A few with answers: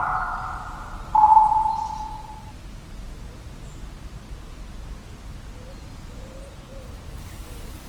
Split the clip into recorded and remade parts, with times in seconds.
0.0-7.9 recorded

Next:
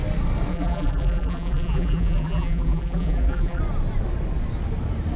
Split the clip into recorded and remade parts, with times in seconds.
0.0-0.5 recorded; 0.5-3.6 remade; 3.6-5.2 recorded

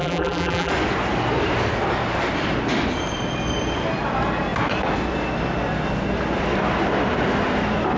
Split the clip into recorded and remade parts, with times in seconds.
0.0-0.7 remade; 0.7-8.0 recorded

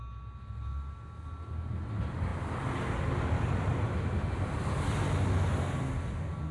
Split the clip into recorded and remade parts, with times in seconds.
0.0-6.5 recorded

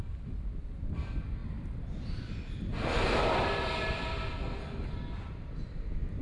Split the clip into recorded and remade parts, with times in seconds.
0.0-6.2 recorded